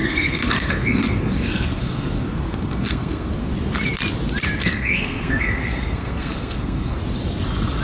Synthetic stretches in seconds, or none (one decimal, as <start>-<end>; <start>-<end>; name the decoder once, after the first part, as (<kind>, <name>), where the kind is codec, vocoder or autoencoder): 0.0-3.3 (codec, SNAC); 4.6-7.0